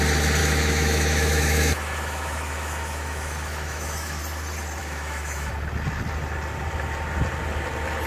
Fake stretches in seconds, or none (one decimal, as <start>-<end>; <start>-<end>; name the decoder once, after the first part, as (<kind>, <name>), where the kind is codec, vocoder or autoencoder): 0.4-4.2 (autoencoder, DAC-VAE); 4.8-5.5